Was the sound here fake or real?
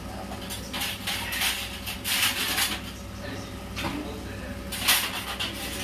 real